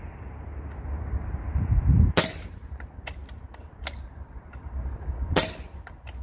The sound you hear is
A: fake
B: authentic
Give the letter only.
B